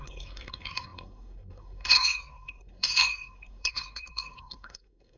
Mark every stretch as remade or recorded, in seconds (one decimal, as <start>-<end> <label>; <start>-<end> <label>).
0.0-5.2 remade